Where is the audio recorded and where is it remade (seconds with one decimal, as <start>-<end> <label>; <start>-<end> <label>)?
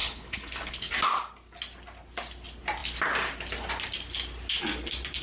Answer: 0.0-0.9 remade; 0.9-5.2 recorded